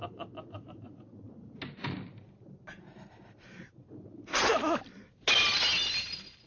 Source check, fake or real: real